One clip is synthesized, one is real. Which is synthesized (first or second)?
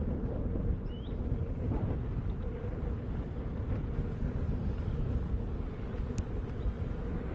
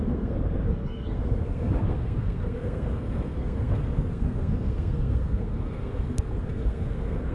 second